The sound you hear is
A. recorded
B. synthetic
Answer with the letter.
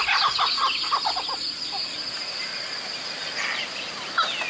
A